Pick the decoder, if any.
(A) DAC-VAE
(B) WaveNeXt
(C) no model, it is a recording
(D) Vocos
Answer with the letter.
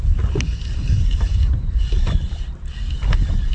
C